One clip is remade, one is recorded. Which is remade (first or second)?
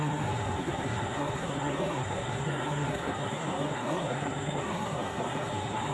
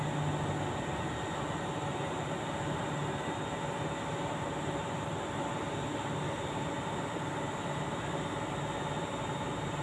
first